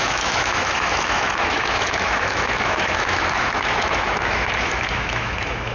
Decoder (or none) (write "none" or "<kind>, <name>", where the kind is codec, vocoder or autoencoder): autoencoder, DAC-VAE